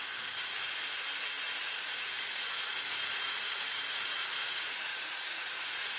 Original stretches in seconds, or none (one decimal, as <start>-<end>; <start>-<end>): 0.0-1.6